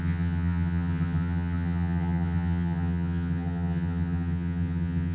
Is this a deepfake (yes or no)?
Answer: yes